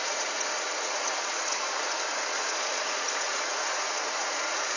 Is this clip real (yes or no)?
no